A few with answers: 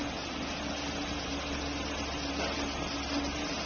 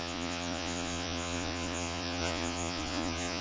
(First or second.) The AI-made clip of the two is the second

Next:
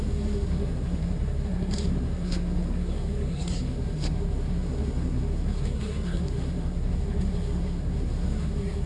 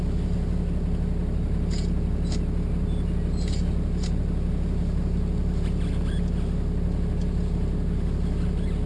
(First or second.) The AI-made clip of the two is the first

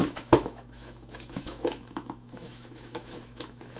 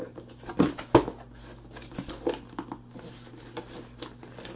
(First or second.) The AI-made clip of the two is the first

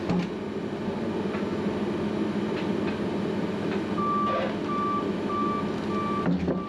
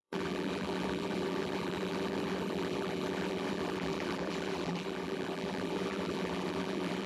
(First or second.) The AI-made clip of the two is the second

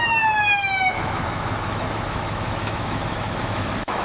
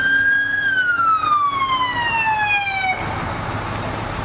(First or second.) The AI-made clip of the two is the first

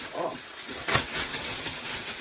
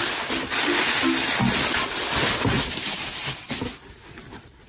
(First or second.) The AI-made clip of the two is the first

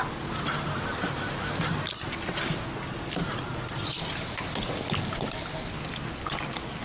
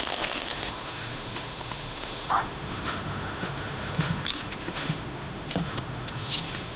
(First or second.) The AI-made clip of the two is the second